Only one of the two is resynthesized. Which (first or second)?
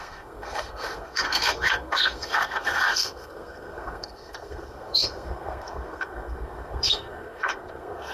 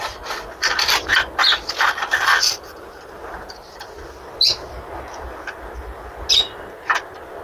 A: first